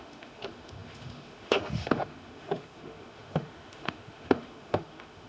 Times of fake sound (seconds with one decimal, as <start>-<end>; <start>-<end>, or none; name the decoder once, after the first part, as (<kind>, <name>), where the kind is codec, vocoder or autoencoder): 0.0-5.3 (autoencoder, DAC-VAE)